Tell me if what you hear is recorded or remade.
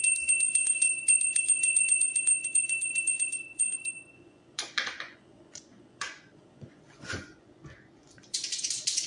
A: remade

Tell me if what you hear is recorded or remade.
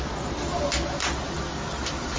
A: recorded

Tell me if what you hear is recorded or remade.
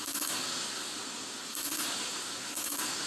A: remade